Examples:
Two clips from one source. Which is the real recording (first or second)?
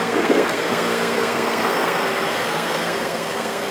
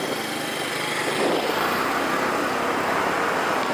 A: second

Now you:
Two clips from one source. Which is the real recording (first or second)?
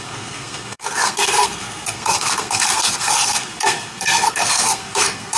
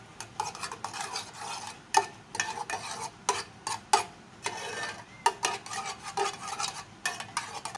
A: second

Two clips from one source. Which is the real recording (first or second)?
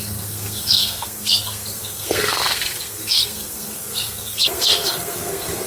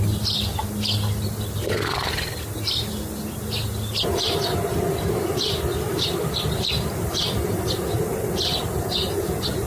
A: second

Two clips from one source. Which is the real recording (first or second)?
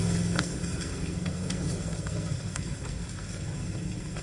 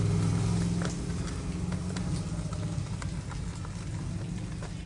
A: second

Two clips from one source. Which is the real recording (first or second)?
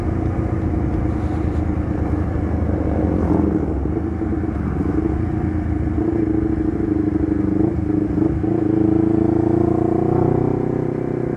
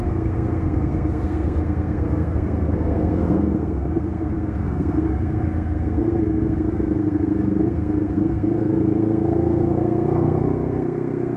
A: first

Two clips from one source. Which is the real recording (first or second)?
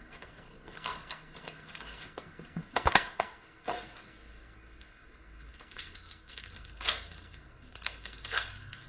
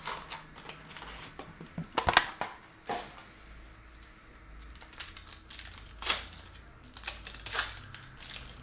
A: second